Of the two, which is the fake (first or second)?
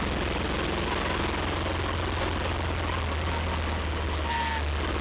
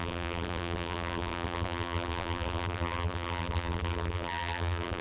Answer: second